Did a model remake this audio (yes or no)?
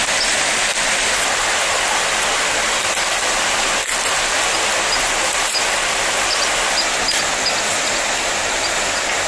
no